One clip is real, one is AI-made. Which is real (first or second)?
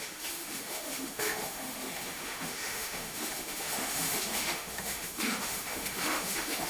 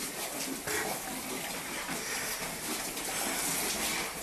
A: second